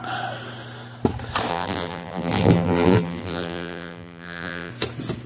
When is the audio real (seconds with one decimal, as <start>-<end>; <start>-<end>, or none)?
0.0-1.5; 4.7-5.3